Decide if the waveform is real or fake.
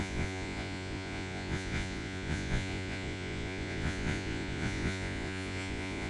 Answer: fake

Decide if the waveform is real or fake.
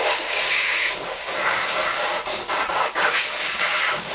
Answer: fake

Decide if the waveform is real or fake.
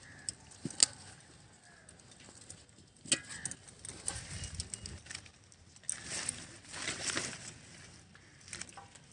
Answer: real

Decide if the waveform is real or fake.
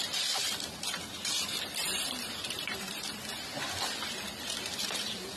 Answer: fake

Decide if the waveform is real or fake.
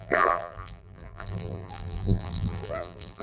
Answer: fake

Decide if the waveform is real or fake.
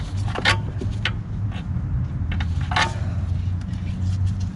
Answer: real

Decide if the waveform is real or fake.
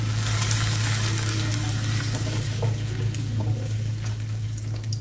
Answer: fake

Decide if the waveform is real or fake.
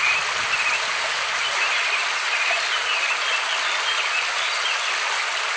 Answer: real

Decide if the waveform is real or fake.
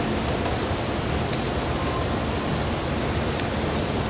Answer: real